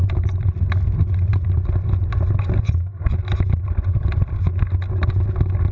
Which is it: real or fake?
real